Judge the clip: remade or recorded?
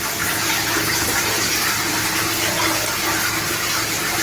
recorded